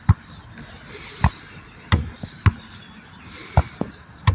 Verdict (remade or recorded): recorded